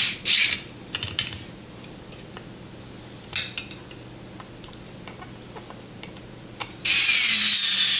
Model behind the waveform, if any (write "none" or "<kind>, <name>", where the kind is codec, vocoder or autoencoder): none